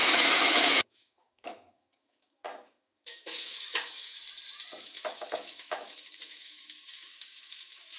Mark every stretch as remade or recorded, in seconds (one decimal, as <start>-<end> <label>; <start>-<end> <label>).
0.0-4.2 remade; 4.2-4.8 recorded; 4.8-8.0 remade